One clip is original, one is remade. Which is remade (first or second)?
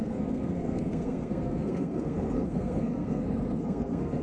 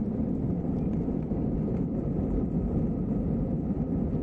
first